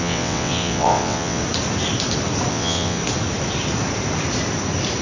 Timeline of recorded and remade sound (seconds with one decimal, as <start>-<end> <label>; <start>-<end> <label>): 0.0-1.4 remade; 1.4-2.5 recorded; 2.5-3.0 remade; 3.0-5.0 recorded